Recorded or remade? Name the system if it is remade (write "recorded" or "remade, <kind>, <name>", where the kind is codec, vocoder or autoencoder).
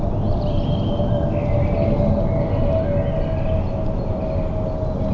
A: recorded